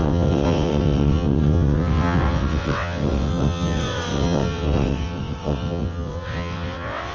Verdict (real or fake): fake